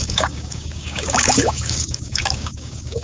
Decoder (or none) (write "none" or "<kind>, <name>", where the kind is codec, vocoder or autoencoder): codec, DAC